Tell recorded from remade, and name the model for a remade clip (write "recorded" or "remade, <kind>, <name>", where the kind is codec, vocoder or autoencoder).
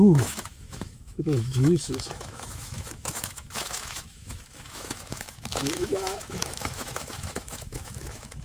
remade, autoencoder, DAC-VAE